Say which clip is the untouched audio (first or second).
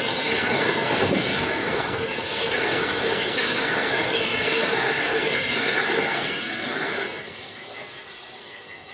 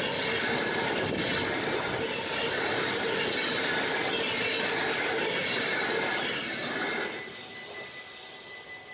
second